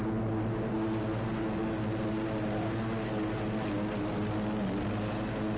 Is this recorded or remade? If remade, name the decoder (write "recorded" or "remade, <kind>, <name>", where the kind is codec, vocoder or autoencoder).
recorded